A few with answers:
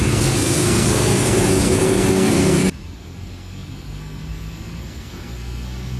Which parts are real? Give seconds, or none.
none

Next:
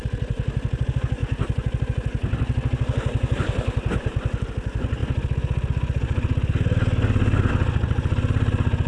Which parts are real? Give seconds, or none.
0.0-8.9

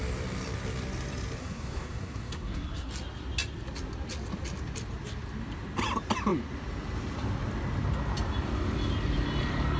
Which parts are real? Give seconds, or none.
0.0-1.4; 2.9-9.8

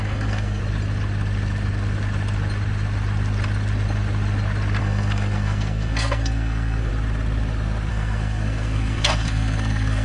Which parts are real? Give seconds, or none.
0.6-4.8; 6.9-7.9

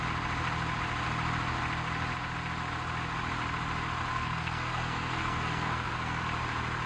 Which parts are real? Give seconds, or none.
0.0-4.1; 6.2-6.9

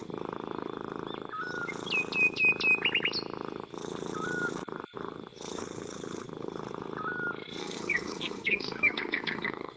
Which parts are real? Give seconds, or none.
0.0-7.6